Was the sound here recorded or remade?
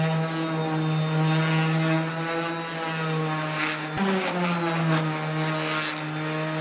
recorded